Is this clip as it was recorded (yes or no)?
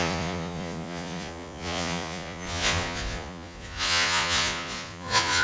no